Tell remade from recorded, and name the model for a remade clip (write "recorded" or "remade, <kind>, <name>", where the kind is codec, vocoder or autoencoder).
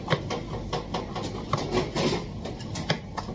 recorded